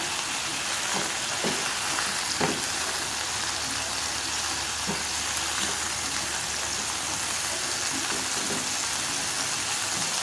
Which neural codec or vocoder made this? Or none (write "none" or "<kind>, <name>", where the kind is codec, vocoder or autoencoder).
none